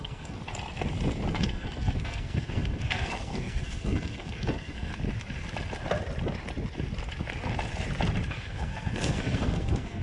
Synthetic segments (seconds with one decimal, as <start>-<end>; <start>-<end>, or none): 0.0-0.4; 1.3-4.9; 8.3-10.0